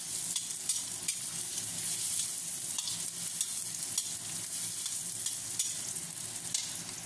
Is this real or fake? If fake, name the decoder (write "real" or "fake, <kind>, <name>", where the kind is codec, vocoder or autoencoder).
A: real